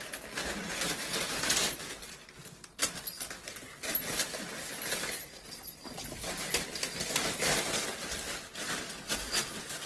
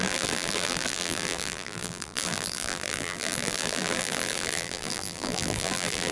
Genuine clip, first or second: first